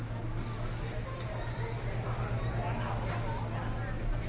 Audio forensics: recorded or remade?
recorded